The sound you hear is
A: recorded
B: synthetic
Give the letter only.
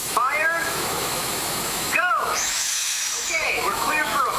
B